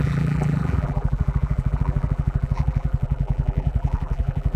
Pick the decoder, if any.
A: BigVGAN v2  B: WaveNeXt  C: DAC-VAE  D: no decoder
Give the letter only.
A